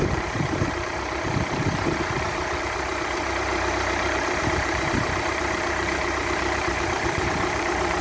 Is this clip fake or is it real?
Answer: fake